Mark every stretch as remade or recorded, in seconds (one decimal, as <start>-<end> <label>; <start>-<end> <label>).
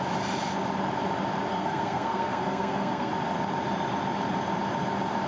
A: 0.0-1.5 recorded; 1.5-3.1 remade; 3.1-5.3 recorded